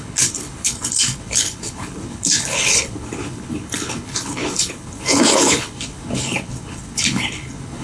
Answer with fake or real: fake